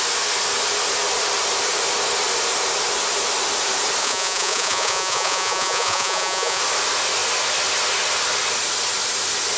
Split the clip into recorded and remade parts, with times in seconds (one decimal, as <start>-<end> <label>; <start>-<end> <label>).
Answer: 0.0-4.0 recorded; 4.0-6.6 remade; 6.6-9.6 recorded